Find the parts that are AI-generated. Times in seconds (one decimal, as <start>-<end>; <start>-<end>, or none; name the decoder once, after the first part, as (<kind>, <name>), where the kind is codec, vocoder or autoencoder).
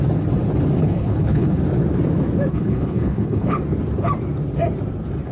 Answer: 0.8-1.6 (codec, HILCodec); 2.5-3.6